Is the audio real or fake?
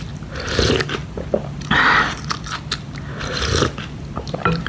real